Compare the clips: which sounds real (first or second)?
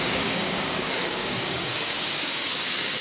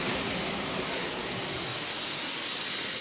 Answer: second